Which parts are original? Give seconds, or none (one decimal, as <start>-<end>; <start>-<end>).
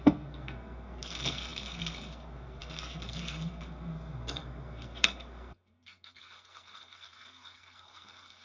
none